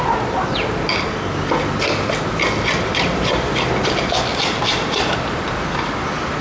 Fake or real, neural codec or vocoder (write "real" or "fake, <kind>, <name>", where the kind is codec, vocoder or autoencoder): real